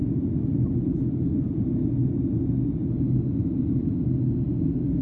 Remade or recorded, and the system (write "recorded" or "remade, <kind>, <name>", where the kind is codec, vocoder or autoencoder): recorded